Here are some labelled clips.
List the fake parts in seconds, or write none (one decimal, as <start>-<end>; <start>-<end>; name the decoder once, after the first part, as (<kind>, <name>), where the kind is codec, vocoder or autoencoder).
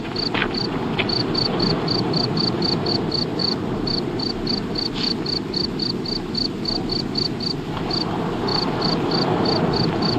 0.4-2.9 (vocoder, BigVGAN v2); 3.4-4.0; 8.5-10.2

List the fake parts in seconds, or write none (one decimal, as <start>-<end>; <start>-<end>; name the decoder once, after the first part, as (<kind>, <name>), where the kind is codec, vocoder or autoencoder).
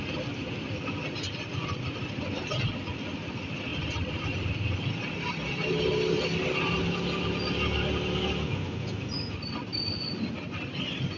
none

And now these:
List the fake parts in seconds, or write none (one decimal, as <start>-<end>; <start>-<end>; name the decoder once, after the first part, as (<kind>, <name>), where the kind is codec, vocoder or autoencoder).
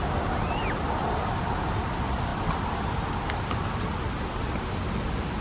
none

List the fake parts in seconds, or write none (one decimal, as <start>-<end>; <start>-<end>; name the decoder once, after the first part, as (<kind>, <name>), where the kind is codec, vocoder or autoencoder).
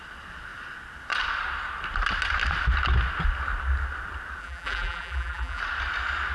4.4-5.6 (vocoder, BigVGAN v2)